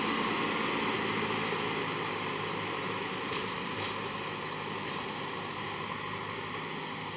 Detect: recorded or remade recorded